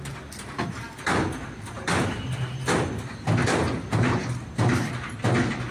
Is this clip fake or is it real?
real